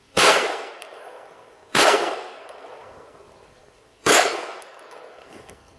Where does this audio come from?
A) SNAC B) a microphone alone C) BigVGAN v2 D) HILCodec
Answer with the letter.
A